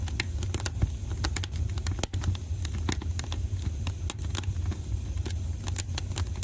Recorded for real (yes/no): yes